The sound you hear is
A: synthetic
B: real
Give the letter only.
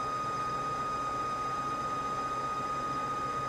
B